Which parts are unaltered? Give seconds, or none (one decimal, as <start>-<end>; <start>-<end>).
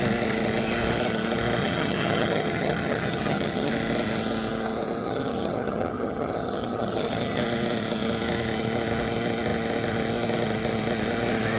0.0-1.6; 3.7-5.0; 7.4-11.6